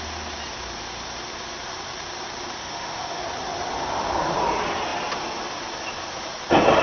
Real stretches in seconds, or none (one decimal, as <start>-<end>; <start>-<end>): 0.0-2.6; 3.2-6.8